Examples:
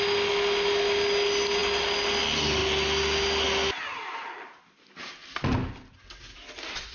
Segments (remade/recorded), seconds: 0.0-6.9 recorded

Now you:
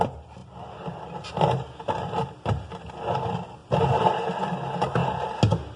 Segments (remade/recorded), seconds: 0.0-5.8 recorded

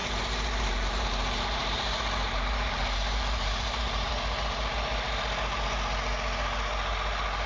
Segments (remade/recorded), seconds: 0.0-4.1 remade; 4.1-7.5 recorded

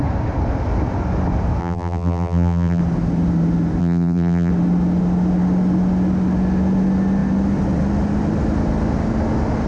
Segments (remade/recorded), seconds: 0.0-1.6 recorded; 1.6-2.8 remade; 2.8-3.8 recorded; 3.8-4.5 remade; 4.5-9.7 recorded

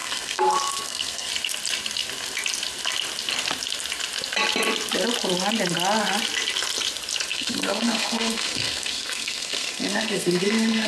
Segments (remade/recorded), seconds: 0.0-1.3 remade; 1.3-7.3 recorded; 7.3-10.9 remade

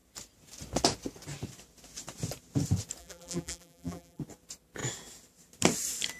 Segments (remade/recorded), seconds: 0.0-3.0 recorded; 3.0-4.2 remade; 4.2-6.2 recorded